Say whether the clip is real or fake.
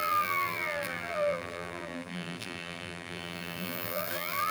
fake